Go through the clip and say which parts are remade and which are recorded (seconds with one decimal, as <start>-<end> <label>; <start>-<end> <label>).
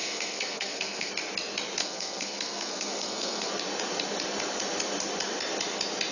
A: 0.0-1.1 remade; 1.1-1.8 recorded; 1.8-3.5 remade; 3.5-6.1 recorded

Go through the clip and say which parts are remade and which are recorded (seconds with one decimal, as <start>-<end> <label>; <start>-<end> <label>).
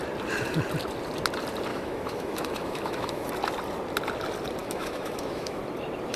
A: 0.0-1.7 recorded; 1.7-3.3 remade; 3.3-4.6 recorded; 4.6-5.6 remade; 5.6-6.2 recorded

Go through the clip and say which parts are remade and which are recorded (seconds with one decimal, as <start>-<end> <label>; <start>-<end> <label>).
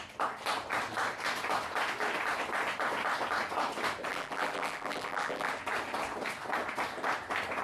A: 0.0-4.1 recorded; 4.1-5.5 remade; 5.5-7.6 recorded